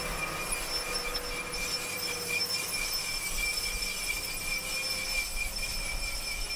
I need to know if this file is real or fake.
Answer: real